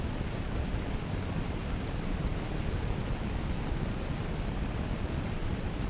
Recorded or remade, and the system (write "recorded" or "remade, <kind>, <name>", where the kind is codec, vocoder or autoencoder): recorded